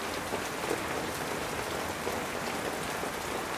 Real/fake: real